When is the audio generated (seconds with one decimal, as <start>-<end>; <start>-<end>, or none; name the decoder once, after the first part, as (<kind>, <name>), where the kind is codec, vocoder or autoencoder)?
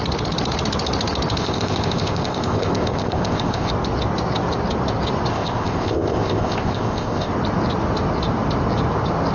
1.4-3.7 (codec, ZipCodec); 5.3-7.3